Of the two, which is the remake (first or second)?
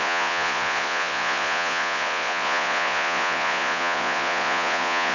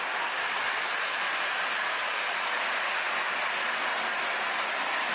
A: first